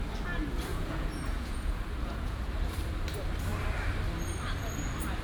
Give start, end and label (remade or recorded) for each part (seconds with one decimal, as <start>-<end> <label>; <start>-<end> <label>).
0.0-0.7 recorded; 0.7-2.5 remade; 2.5-5.2 recorded